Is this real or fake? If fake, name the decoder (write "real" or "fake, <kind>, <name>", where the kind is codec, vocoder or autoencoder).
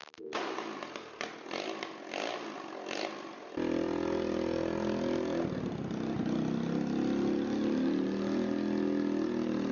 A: real